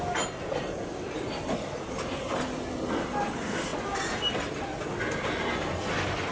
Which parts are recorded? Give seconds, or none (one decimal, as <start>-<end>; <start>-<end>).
0.0-6.3